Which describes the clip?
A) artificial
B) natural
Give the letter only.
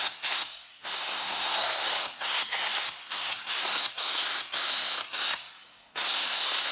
A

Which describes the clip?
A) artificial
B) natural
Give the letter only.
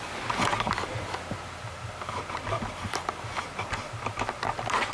B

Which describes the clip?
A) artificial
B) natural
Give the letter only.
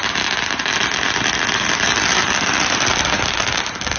B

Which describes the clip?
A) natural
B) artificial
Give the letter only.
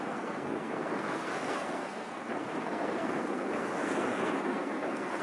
B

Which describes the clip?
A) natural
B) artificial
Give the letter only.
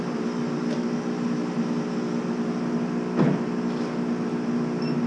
A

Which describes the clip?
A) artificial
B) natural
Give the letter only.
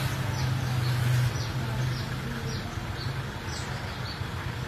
B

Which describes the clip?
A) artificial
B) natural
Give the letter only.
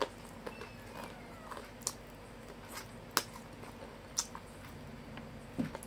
B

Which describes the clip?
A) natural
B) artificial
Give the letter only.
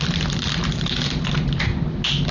A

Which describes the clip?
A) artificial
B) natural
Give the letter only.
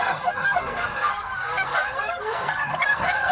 A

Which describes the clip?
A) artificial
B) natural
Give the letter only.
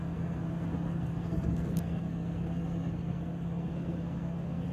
A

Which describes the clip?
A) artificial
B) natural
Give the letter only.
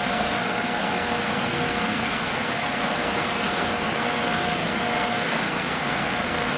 A